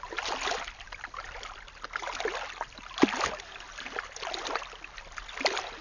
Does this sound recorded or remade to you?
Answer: recorded